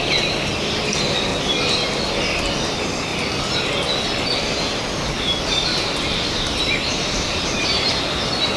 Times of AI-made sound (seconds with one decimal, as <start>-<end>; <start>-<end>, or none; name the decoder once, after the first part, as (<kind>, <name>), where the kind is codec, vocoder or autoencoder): 5.7-7.5 (vocoder, BigVGAN v2)